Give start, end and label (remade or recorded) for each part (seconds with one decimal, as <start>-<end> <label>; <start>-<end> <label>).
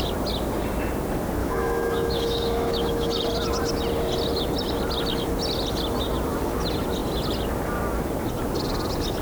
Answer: 0.0-1.4 recorded; 1.4-3.1 remade; 3.1-9.2 recorded